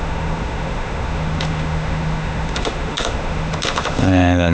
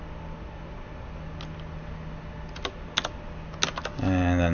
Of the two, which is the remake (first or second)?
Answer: first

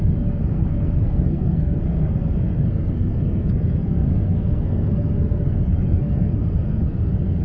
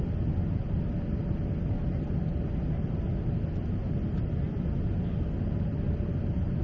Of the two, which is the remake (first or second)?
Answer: first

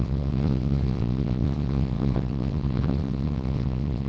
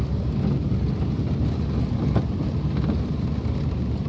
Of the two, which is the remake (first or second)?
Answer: first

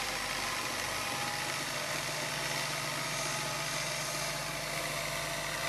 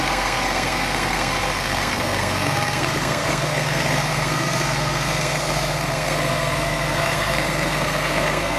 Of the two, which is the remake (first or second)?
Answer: second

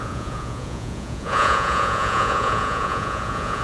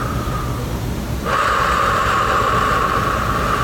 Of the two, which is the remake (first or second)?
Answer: first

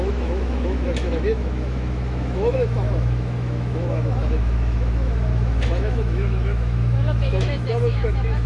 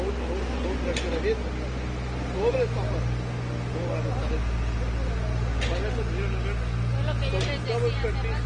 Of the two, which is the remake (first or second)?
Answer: first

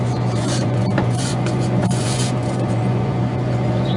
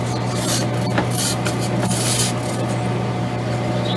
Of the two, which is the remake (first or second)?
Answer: first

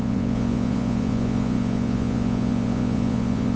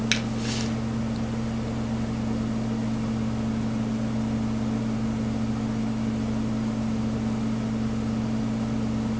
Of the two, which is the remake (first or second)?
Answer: first